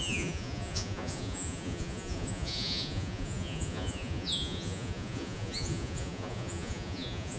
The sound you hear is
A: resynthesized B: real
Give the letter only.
A